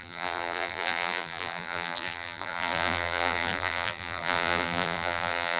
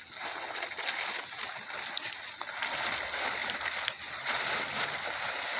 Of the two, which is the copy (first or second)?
first